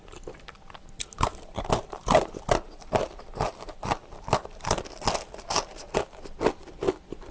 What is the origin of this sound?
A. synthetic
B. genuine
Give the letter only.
B